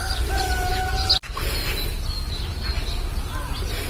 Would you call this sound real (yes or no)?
yes